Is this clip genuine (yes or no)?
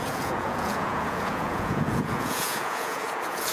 no